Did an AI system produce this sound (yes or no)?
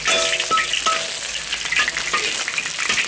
no